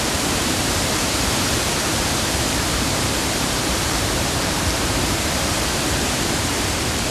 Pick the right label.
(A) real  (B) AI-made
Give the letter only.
B